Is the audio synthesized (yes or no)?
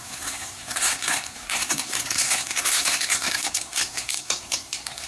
yes